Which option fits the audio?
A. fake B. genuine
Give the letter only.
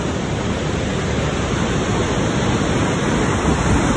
B